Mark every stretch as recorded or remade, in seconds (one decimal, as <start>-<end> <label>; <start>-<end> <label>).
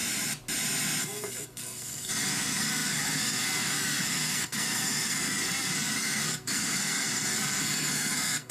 0.0-1.0 recorded; 1.0-8.5 remade